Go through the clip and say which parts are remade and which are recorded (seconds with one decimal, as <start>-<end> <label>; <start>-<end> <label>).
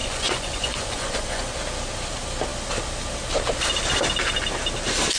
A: 0.0-1.5 remade; 1.5-5.2 recorded